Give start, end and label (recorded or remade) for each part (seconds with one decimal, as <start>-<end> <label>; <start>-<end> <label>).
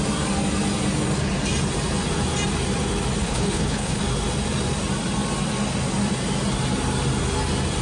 0.0-3.2 recorded; 3.2-4.0 remade; 4.0-7.8 recorded